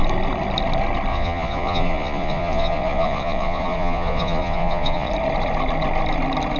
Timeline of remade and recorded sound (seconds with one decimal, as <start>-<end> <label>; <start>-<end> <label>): 0.0-1.1 recorded; 1.1-5.1 remade; 5.1-6.6 recorded